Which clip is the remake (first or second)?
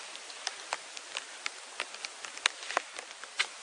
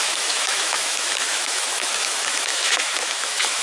second